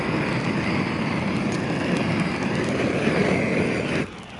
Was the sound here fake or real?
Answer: real